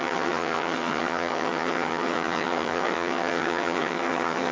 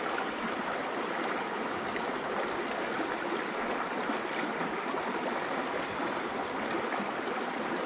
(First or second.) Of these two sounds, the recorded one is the second